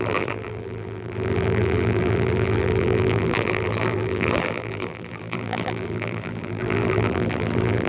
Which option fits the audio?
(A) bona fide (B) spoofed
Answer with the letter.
B